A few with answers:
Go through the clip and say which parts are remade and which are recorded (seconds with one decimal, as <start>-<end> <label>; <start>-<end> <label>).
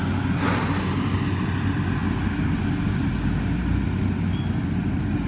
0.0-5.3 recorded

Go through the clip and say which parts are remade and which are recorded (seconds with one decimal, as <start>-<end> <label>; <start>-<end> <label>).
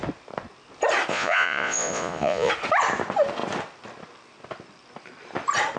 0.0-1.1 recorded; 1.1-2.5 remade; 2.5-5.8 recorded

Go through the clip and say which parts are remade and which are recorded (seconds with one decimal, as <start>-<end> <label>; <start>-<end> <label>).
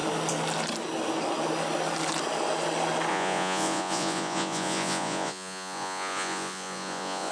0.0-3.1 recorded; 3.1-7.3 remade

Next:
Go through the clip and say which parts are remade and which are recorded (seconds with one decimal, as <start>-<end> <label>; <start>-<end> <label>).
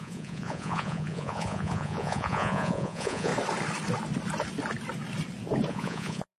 0.0-3.3 remade; 3.3-5.7 recorded; 5.7-6.4 remade